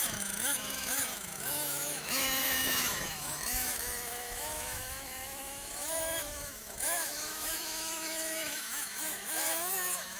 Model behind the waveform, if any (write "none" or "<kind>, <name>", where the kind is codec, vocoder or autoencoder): autoencoder, DAC-VAE